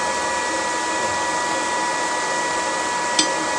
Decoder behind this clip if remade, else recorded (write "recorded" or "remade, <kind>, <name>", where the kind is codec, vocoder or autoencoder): recorded